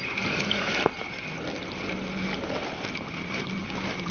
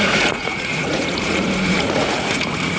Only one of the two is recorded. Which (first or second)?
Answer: first